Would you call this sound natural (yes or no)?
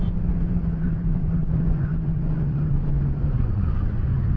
no